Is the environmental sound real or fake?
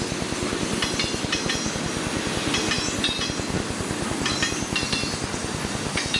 real